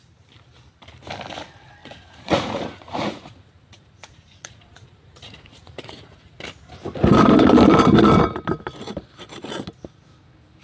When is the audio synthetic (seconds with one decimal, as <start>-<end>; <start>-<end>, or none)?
1.8-6.4